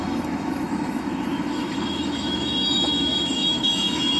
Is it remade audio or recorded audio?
remade